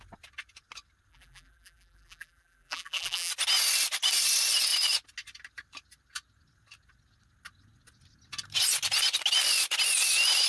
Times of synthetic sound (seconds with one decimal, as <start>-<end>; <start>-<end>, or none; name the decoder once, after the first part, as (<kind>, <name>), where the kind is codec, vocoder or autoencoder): 1.1-3.3 (vocoder, BigVGAN v2)